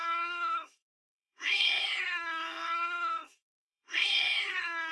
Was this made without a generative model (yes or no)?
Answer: no